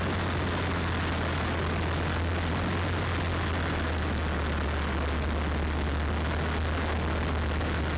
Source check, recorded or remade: recorded